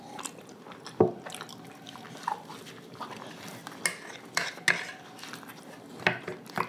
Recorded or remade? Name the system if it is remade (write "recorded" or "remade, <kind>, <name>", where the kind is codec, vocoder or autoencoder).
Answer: recorded